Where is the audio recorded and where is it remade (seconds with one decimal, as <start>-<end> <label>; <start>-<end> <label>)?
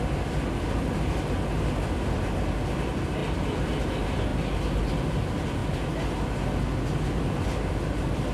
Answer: 0.0-8.3 recorded